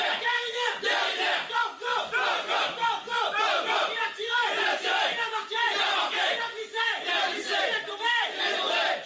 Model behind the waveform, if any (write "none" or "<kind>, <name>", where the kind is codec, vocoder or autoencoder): vocoder, BigVGAN v2